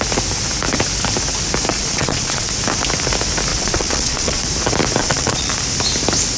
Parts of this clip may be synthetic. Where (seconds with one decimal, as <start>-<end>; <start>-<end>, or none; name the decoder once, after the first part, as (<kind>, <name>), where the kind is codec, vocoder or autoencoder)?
1.7-2.5 (vocoder, Vocos); 3.5-4.4; 5.0-5.5